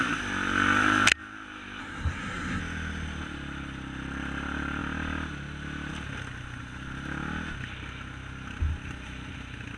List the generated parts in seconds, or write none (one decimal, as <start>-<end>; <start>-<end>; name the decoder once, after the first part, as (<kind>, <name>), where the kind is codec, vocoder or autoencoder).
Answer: 1.8-2.6 (codec, SNAC)